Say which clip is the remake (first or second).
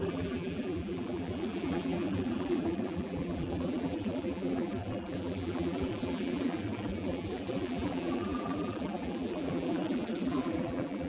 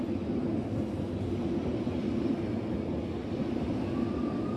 first